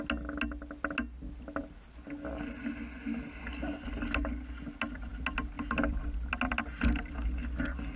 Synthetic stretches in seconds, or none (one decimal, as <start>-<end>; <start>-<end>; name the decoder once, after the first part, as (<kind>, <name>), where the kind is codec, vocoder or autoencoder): none